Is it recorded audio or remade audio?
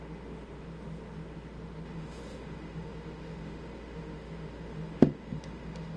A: remade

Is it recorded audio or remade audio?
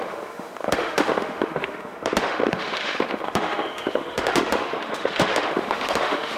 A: remade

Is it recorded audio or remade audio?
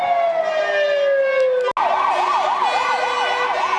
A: recorded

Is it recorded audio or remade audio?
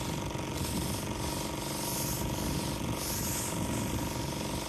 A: recorded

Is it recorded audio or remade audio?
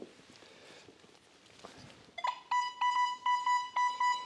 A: recorded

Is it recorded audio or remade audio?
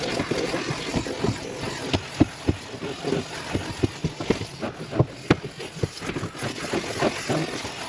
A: recorded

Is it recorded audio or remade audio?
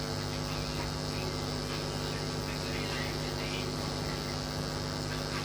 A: recorded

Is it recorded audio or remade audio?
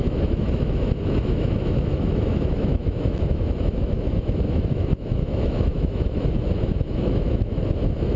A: remade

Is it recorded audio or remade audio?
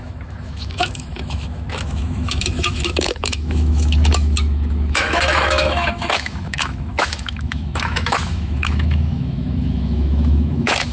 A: remade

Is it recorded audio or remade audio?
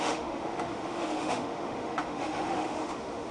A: remade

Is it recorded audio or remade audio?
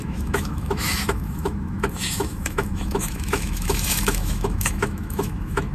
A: remade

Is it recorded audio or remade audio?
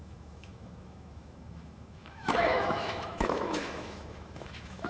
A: remade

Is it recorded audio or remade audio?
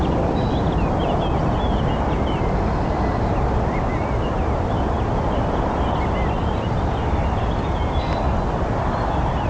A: recorded